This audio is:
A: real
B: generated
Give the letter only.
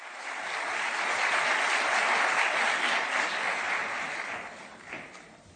A